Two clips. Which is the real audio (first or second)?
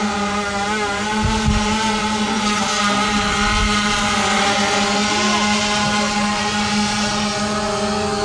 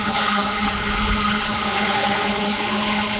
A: first